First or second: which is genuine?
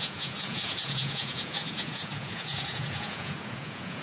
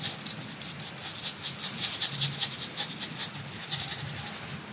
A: second